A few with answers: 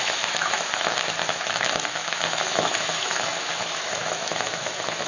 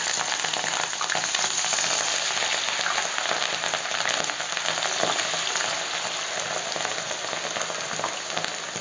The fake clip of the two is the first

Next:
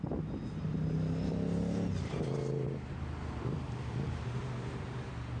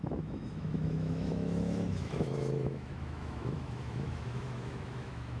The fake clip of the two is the second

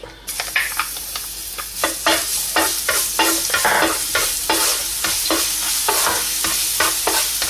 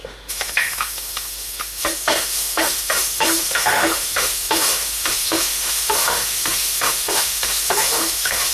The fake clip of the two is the second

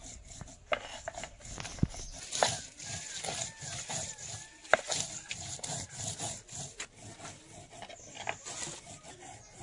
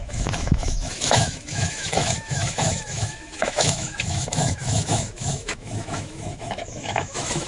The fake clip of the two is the second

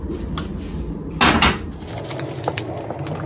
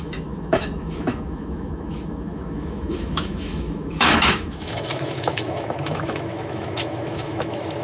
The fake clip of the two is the second